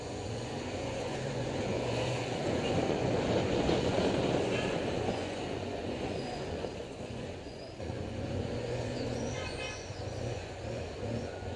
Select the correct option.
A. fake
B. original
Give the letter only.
A